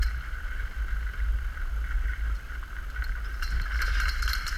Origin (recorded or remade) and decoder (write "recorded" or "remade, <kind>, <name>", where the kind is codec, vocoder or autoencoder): recorded